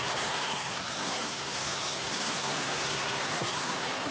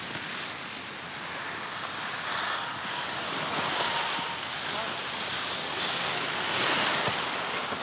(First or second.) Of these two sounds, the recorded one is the second